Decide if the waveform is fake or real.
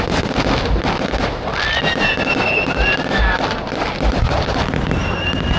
real